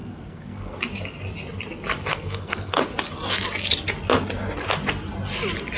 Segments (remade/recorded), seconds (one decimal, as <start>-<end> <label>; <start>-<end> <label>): 0.0-0.8 remade; 0.8-2.1 recorded; 2.1-2.8 remade; 2.8-5.8 recorded